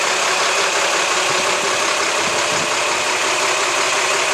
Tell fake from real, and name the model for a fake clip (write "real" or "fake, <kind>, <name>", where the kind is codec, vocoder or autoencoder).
real